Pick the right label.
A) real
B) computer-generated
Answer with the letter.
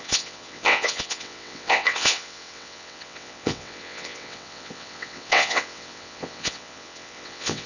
B